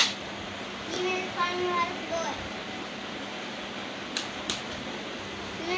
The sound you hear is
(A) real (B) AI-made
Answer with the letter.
A